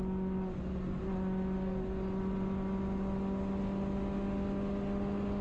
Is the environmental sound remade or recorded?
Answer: recorded